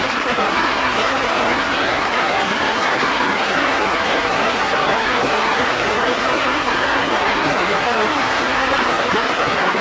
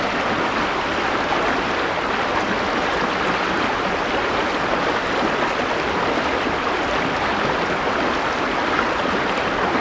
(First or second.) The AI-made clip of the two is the first